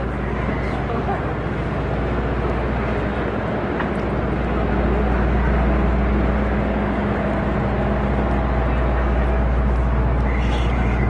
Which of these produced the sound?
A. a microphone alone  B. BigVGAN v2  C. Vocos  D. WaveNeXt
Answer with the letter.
A